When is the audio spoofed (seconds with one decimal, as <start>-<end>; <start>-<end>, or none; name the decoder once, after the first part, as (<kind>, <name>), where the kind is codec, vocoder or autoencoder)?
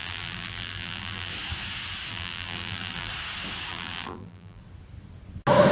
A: 0.0-1.3 (vocoder, BigVGAN v2); 2.1-3.1; 3.7-4.6